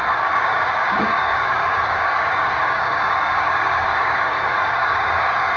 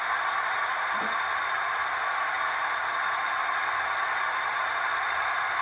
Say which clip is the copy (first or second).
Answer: first